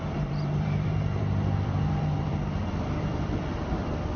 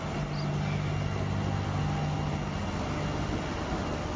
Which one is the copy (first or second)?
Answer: first